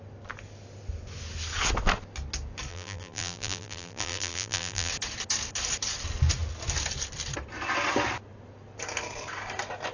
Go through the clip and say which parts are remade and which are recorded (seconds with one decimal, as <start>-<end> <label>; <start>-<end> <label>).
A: 0.0-2.7 recorded; 2.7-4.9 remade; 4.9-9.9 recorded